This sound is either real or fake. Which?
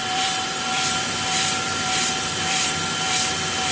fake